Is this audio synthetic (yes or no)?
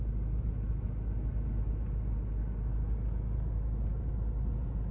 no